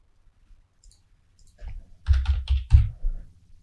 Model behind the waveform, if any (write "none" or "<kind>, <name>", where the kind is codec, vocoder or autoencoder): vocoder, BigVGAN v2